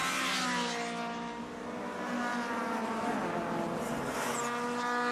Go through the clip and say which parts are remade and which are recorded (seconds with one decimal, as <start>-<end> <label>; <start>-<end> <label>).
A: 0.0-2.3 recorded; 2.3-3.4 remade; 3.4-5.1 recorded